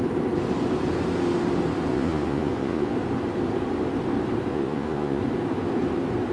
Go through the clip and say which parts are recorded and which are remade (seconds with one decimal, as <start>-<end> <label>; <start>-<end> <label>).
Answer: 0.0-1.9 recorded; 1.9-2.9 remade; 2.9-4.5 recorded; 4.5-5.2 remade; 5.2-6.3 recorded